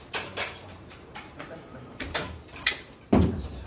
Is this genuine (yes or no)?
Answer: no